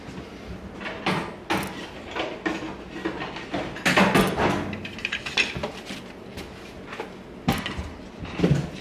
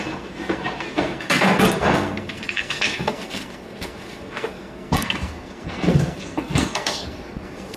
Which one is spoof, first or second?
second